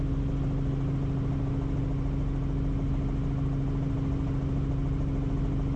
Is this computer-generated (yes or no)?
no